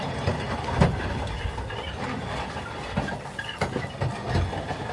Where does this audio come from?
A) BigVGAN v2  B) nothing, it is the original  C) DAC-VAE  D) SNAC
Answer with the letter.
B